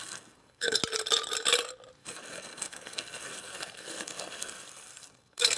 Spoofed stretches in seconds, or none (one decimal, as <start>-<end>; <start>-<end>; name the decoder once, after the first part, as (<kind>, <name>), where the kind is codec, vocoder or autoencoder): 0.0-0.8 (codec, SNAC); 2.0-5.6